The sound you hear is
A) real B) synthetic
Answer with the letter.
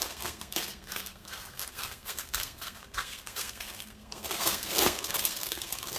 B